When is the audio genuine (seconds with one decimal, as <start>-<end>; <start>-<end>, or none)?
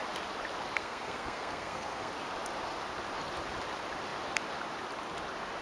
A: 0.0-0.8; 2.1-5.6